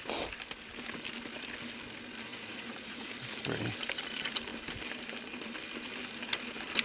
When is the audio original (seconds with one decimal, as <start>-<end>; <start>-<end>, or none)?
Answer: 0.0-2.3; 3.1-6.8